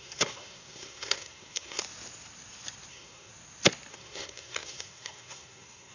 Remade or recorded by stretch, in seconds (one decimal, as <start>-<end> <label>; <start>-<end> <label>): 0.0-1.8 remade; 1.8-2.9 recorded; 2.9-3.3 remade; 3.3-3.9 recorded; 3.9-5.9 remade